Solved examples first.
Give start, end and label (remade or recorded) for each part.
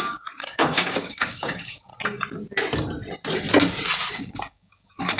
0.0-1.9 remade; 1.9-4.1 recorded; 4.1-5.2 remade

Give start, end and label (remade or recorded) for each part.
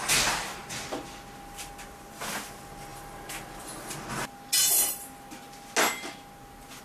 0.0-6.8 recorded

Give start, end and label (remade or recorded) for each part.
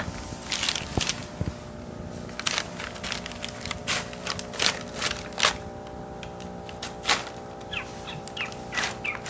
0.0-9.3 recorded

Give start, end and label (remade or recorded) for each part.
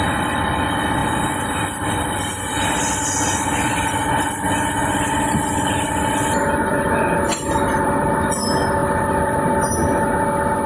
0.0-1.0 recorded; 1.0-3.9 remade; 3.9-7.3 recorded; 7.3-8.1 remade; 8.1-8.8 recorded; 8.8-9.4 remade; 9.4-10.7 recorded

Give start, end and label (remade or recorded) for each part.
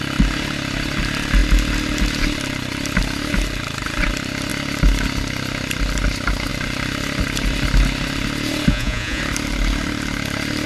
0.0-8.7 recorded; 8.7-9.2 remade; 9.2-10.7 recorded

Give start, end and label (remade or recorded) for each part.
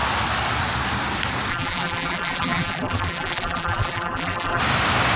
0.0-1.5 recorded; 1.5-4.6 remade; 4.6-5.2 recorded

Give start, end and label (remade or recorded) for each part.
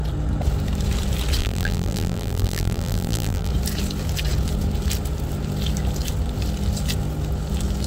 0.0-1.4 recorded; 1.4-3.5 remade; 3.5-7.9 recorded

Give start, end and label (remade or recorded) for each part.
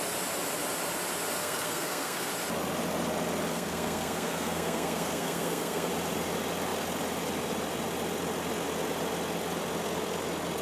0.0-1.4 recorded; 1.4-2.3 remade; 2.3-3.5 recorded; 3.5-5.9 remade; 5.9-10.6 recorded